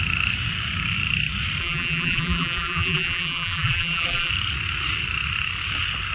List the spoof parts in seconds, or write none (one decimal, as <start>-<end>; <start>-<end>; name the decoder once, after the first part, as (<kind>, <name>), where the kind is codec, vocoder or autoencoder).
1.6-4.3 (vocoder, BigVGAN v2)